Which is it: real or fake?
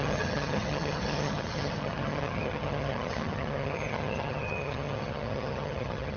fake